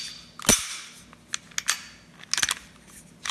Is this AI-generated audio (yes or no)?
no